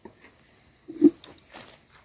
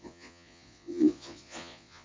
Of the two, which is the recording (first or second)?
first